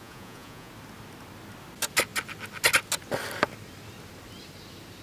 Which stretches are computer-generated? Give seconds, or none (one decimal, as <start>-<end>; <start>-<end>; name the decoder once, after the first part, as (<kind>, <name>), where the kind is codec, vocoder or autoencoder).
0.0-0.7 (vocoder, Vocos)